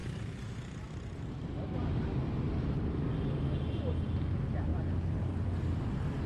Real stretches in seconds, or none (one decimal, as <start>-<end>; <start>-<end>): 0.0-6.3

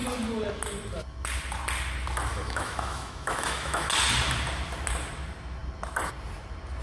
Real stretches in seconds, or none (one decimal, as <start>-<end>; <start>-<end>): 0.0-2.3; 3.9-6.8